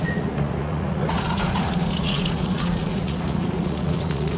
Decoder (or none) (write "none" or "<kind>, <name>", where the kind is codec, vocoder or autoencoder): vocoder, Vocos